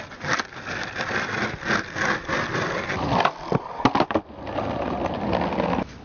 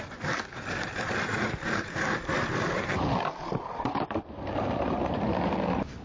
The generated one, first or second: second